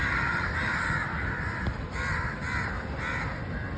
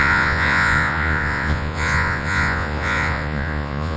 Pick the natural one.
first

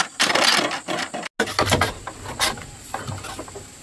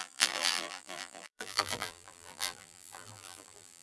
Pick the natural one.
first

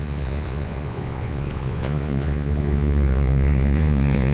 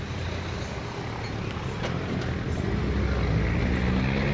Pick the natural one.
second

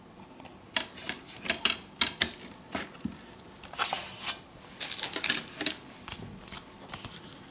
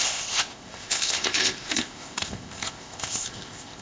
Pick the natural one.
first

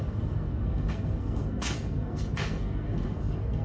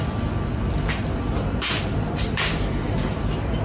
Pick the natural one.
second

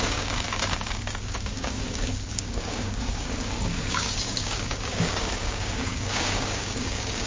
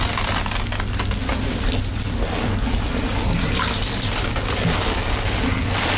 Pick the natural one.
second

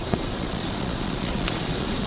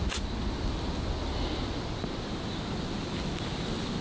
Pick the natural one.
second